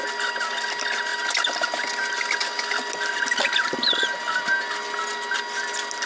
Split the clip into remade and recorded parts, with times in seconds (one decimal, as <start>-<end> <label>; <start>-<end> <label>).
0.0-6.1 recorded